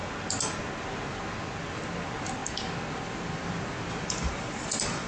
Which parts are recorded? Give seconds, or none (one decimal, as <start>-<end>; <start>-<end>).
0.0-5.1